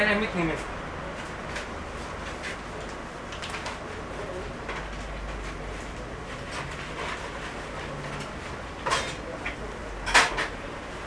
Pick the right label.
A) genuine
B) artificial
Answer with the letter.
A